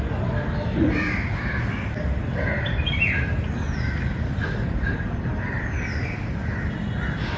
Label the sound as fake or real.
real